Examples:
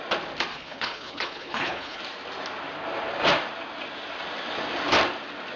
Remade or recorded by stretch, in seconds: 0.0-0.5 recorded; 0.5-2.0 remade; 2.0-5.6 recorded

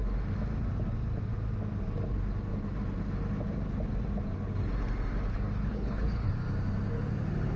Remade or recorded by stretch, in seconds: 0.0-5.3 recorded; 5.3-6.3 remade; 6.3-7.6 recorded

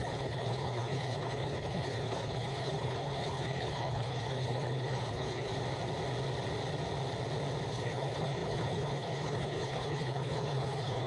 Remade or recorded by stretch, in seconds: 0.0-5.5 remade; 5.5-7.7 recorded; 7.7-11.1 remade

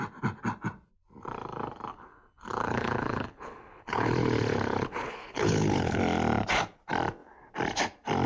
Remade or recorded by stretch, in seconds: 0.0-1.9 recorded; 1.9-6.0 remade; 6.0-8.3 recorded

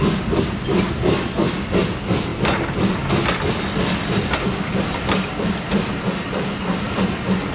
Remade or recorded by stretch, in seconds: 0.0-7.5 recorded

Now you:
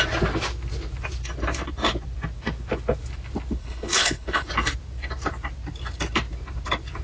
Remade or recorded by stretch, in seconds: 0.0-3.6 recorded; 3.6-4.5 remade; 4.5-7.0 recorded

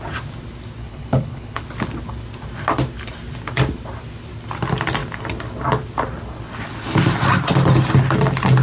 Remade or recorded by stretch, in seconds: 0.0-0.8 recorded; 0.8-1.6 remade; 1.6-8.6 recorded

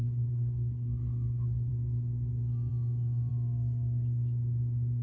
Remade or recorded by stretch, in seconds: 0.0-1.7 remade; 1.7-5.0 recorded